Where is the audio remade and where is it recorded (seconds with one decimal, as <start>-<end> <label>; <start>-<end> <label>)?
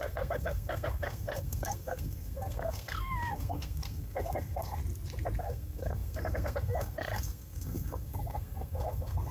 0.0-4.8 remade; 4.8-5.4 recorded; 5.4-9.3 remade